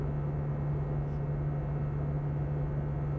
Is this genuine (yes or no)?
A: yes